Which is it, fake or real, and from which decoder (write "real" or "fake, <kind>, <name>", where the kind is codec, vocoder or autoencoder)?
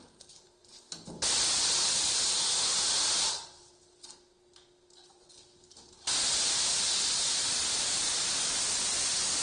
real